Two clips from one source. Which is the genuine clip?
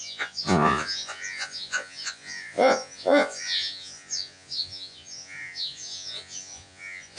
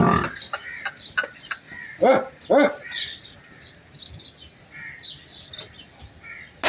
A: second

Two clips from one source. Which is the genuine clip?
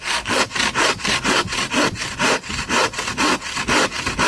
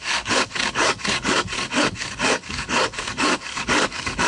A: first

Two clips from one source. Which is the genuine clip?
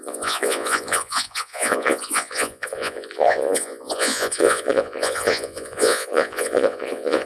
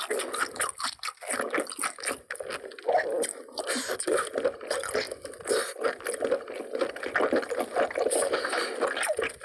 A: second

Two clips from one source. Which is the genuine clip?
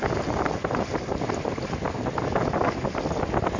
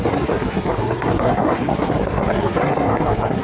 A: first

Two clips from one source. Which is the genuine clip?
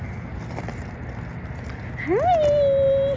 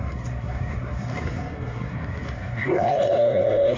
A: first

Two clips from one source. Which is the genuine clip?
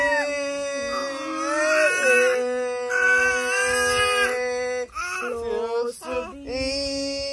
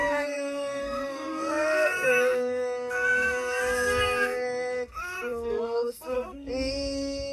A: first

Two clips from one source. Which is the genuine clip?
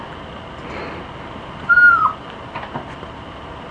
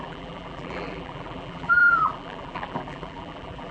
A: first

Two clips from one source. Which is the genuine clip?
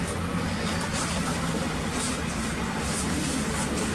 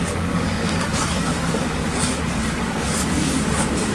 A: first